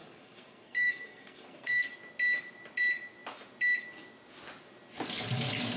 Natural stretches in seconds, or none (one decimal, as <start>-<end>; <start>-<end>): 1.9-5.8